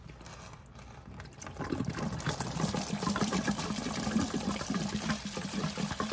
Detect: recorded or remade recorded